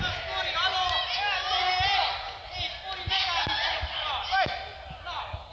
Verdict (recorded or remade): recorded